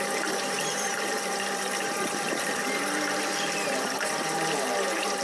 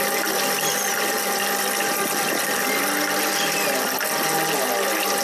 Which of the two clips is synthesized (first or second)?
first